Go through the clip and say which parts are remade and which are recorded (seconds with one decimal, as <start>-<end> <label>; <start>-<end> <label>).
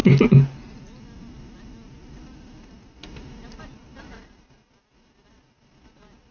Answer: 0.0-6.3 recorded